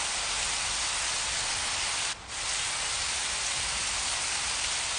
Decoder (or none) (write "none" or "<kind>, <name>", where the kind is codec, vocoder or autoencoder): none